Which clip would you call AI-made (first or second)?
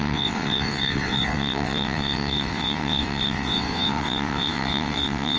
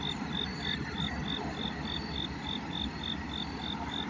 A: first